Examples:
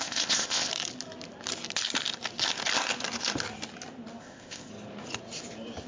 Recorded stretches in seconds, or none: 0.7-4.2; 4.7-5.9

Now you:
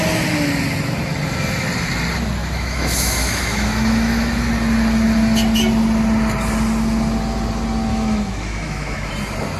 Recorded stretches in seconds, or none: 0.0-2.4; 4.4-7.9; 9.1-9.6

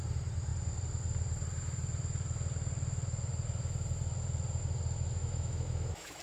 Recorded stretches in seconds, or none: 0.0-5.2

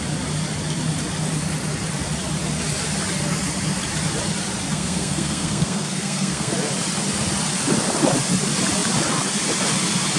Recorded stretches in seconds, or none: 0.0-4.7; 6.5-10.2